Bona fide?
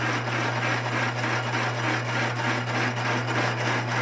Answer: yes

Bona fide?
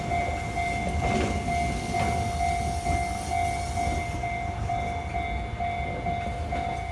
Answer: yes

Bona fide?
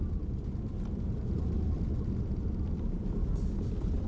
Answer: yes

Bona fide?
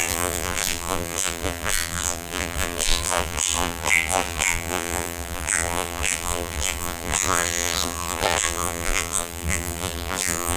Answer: no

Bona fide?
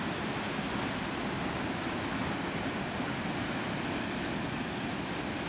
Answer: yes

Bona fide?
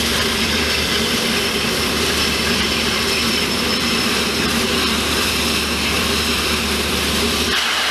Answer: no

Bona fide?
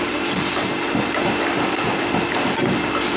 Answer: no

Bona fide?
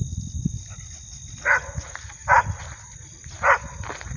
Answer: no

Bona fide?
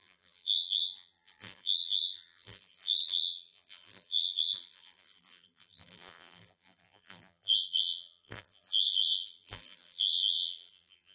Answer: no